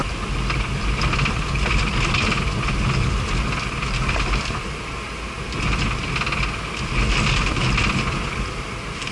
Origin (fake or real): real